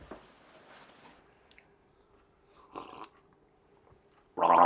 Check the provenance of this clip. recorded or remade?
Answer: recorded